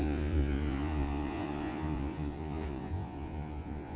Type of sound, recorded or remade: remade